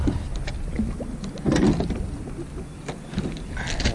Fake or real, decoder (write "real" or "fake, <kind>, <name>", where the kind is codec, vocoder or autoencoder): real